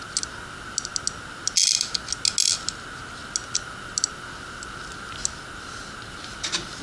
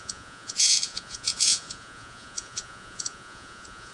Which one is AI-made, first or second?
second